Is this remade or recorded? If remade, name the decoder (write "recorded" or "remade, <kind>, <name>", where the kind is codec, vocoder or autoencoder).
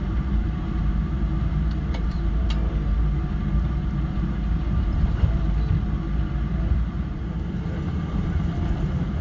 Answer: remade, vocoder, BigVGAN v2